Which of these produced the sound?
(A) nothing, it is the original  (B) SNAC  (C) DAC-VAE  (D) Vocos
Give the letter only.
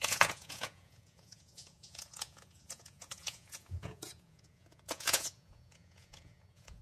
D